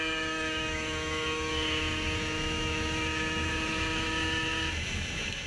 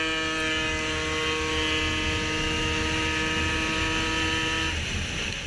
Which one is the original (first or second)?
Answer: second